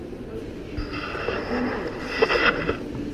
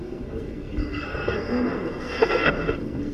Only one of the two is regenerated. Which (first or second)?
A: second